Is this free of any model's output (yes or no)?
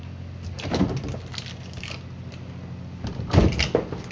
yes